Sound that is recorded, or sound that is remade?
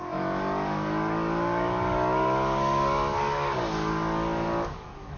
remade